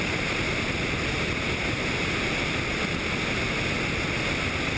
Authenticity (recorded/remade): recorded